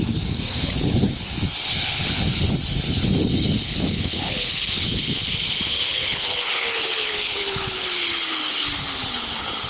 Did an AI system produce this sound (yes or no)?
yes